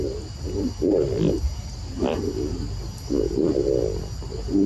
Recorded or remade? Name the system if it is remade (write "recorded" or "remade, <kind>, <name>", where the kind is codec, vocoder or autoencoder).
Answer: recorded